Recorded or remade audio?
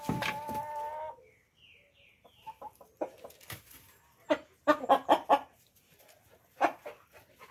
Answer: recorded